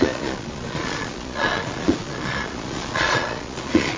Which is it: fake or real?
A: fake